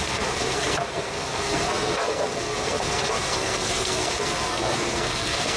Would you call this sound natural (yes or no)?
no